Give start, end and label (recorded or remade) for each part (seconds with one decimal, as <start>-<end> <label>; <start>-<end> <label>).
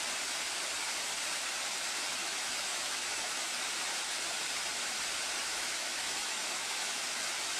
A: 0.0-2.2 recorded; 2.2-3.5 remade; 3.5-5.5 recorded; 5.5-7.0 remade; 7.0-7.6 recorded